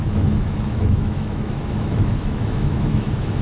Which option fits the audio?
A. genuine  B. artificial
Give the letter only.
B